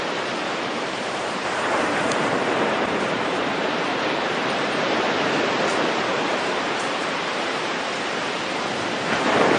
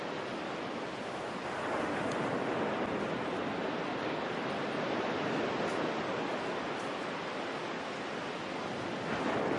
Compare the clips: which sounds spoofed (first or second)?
first